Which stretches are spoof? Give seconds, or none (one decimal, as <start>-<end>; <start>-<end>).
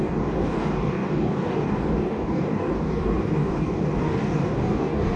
0.0-5.2